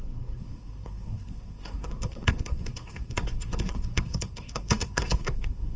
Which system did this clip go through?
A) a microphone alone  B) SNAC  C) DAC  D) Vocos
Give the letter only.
B